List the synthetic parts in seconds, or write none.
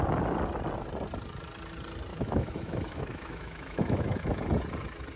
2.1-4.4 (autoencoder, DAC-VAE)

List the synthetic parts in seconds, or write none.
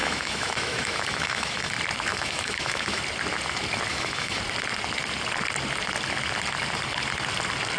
0.0-1.7 (autoencoder, DAC-VAE); 2.1-3.0; 3.9-4.4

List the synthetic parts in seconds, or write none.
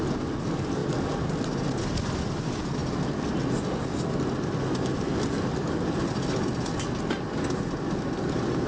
none